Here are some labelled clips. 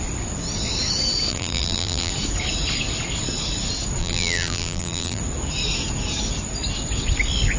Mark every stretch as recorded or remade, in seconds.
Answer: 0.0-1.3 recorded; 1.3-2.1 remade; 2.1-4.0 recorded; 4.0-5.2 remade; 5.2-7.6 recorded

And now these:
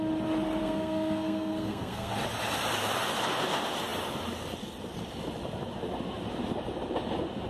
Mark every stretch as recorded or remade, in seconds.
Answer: 0.0-0.6 recorded; 0.6-2.1 remade; 2.1-7.5 recorded

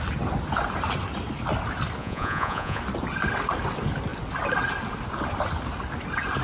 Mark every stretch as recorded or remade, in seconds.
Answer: 0.0-2.0 recorded; 2.0-2.8 remade; 2.8-6.4 recorded